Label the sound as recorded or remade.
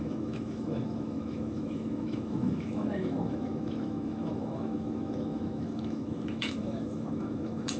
remade